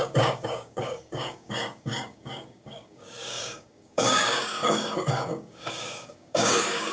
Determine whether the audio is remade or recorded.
remade